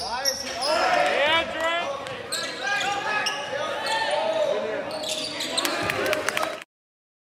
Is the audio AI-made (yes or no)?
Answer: no